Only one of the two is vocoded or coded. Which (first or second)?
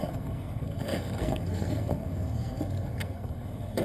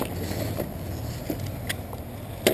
first